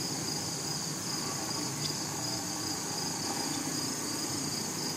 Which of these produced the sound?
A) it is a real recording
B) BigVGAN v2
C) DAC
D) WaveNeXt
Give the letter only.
A